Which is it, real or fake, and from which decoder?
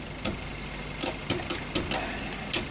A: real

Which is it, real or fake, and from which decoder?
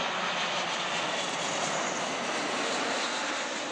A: real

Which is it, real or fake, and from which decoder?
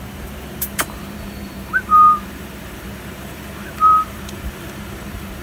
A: fake, vocoder, BigVGAN v2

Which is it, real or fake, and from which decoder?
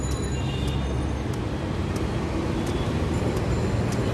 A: real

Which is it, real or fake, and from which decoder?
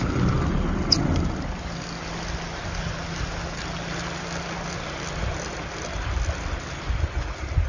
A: real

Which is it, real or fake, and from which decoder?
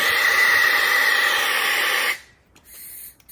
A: real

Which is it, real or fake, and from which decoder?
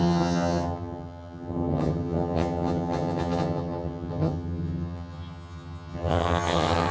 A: fake, vocoder, HiFi-GAN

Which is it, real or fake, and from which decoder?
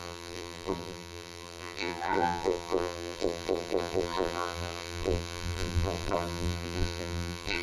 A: fake, vocoder, BigVGAN v2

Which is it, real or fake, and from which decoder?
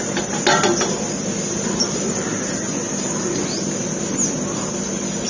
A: real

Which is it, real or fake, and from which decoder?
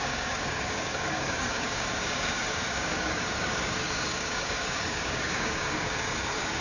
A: fake, codec, DAC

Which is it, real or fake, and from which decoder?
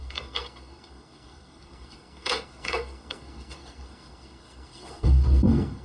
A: fake, codec, SNAC